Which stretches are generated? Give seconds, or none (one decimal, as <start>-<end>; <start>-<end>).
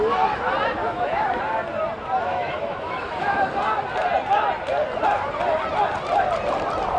0.8-1.4; 2.2-3.4